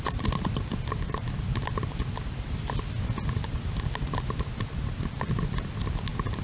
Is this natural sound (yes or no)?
yes